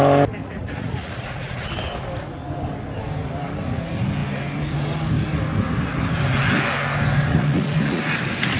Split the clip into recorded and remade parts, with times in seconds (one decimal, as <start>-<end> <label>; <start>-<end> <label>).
0.0-0.4 recorded; 0.4-1.7 remade; 1.7-7.3 recorded; 7.3-8.0 remade; 8.0-8.6 recorded